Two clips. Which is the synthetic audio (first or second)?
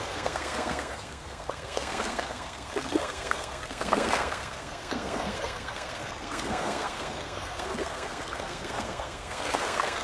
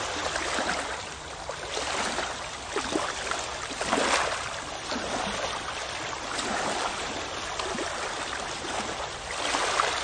first